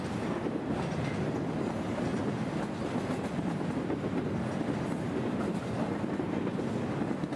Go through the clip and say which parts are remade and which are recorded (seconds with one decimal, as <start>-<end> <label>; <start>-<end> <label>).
0.0-7.4 recorded

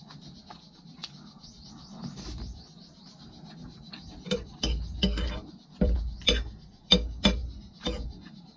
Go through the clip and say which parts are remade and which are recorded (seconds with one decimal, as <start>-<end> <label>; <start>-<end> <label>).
0.0-7.4 recorded; 7.4-8.6 remade

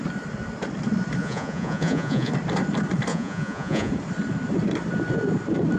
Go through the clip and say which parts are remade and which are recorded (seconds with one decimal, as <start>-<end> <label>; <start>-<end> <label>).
0.0-1.2 recorded; 1.2-2.3 remade; 2.3-3.1 recorded; 3.1-3.9 remade; 3.9-5.8 recorded

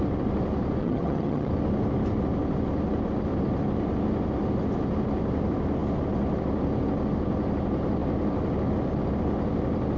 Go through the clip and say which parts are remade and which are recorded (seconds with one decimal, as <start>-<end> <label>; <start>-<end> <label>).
0.0-0.8 recorded; 0.8-1.5 remade; 1.5-10.0 recorded

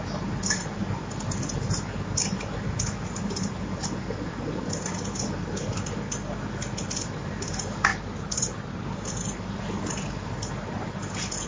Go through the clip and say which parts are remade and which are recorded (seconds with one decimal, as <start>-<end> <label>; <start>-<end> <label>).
0.0-11.5 recorded

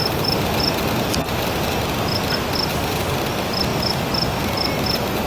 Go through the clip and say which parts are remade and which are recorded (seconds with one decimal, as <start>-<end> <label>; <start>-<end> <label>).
0.0-0.7 remade; 0.7-5.3 recorded

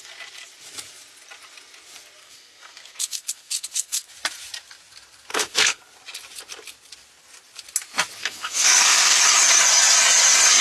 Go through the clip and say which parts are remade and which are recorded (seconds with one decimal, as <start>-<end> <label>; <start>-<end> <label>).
0.0-2.2 recorded; 2.2-4.1 remade; 4.1-5.3 recorded; 5.3-5.8 remade; 5.8-8.2 recorded; 8.2-9.2 remade; 9.2-10.6 recorded

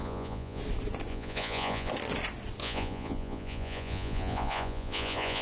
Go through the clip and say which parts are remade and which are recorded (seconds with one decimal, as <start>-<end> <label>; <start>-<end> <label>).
0.0-0.6 remade; 0.6-1.1 recorded; 1.1-1.9 remade; 1.9-2.6 recorded; 2.6-5.4 remade